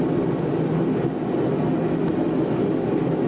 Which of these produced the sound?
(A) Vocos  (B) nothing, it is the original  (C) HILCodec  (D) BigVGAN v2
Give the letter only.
B